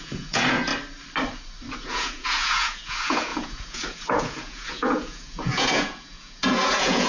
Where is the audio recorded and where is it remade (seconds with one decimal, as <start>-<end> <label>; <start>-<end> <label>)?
0.0-0.7 remade; 0.7-1.7 recorded; 1.7-7.1 remade